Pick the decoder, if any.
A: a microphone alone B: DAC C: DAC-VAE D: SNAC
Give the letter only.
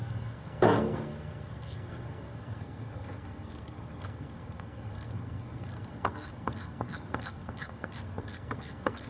D